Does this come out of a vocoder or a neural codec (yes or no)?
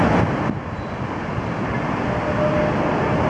no